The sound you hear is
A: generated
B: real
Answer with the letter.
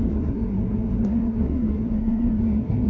A